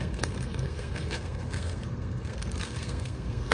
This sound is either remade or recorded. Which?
remade